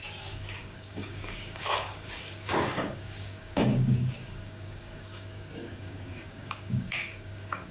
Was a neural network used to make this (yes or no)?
yes